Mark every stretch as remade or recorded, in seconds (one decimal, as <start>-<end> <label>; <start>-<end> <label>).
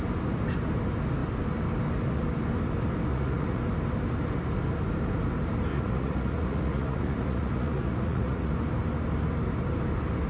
0.0-3.1 recorded; 3.1-3.6 remade; 3.6-5.7 recorded; 5.7-8.5 remade; 8.5-10.3 recorded